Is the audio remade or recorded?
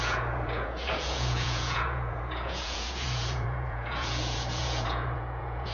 remade